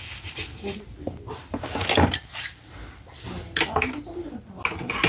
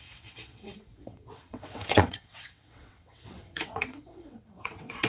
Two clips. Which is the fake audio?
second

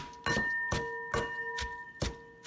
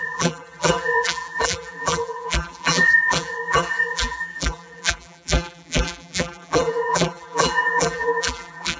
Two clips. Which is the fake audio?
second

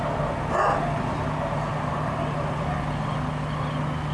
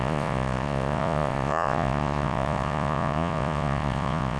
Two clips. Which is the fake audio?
second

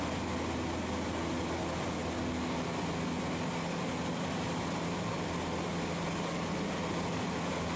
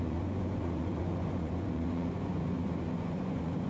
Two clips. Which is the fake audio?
second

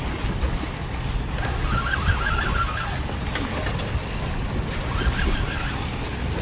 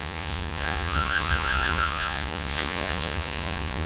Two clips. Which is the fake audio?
second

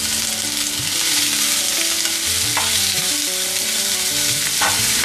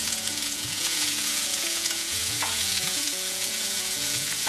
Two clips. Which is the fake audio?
second